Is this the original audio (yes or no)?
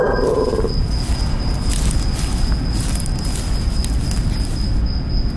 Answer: yes